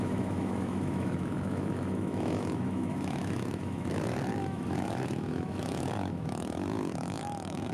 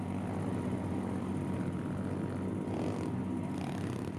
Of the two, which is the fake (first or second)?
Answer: first